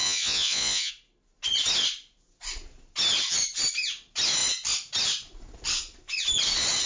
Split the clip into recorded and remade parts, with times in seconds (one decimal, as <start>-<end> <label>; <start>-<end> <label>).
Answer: 0.0-0.9 remade; 0.9-6.9 recorded